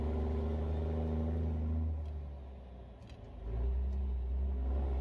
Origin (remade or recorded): recorded